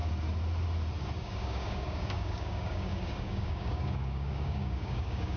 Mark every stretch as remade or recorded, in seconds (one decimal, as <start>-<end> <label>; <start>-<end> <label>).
0.0-1.2 recorded; 1.2-5.4 remade